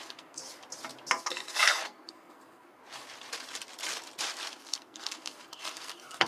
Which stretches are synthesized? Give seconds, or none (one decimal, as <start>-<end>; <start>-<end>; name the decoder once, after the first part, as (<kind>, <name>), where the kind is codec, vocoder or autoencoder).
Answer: 0.0-0.4 (codec, SNAC); 1.2-2.8; 4.5-6.3